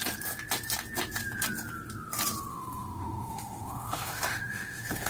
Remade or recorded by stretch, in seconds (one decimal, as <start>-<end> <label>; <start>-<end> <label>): 0.0-2.5 recorded; 2.5-5.1 remade